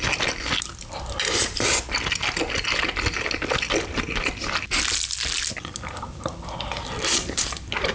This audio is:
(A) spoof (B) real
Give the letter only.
B